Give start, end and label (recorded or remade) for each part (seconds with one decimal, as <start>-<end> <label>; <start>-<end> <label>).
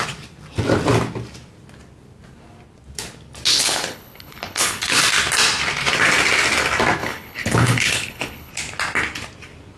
0.0-3.5 recorded; 3.5-5.0 remade; 5.0-7.0 recorded; 7.0-8.5 remade; 8.5-9.8 recorded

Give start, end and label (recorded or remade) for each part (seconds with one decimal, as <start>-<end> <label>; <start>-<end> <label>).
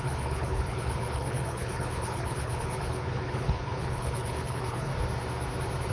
0.0-4.9 remade; 4.9-5.9 recorded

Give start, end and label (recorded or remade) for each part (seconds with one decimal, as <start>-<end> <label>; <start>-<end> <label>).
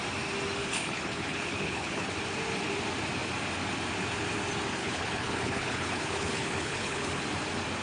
0.0-0.6 recorded; 0.6-2.1 remade; 2.1-4.8 recorded; 4.8-7.2 remade; 7.2-7.8 recorded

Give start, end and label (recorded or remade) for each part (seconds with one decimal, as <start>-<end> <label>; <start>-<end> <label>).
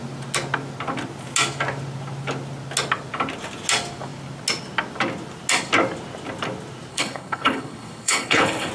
0.0-6.9 recorded; 6.9-8.7 remade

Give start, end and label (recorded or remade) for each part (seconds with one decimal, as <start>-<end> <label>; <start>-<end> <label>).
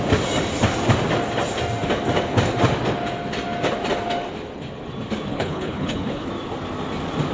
0.0-5.3 recorded; 5.3-6.3 remade; 6.3-7.3 recorded